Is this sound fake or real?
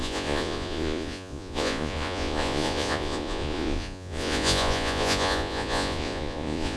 fake